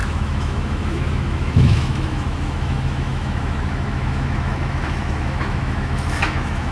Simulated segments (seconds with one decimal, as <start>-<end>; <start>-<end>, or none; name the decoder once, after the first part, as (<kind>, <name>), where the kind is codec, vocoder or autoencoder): 0.0-6.7 (autoencoder, DAC-VAE)